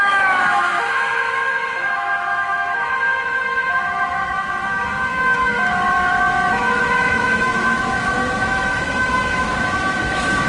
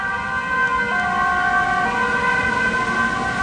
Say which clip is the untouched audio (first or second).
second